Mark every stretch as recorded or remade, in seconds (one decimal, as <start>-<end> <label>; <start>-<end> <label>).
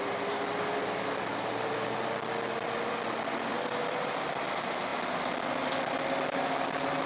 0.0-3.5 recorded; 3.5-4.1 remade; 4.1-7.1 recorded